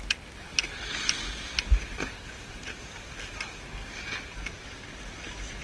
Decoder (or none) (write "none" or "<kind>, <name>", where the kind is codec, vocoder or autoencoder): none